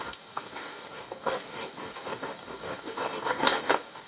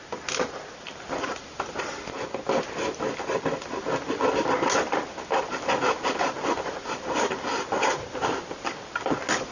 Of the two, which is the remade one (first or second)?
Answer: first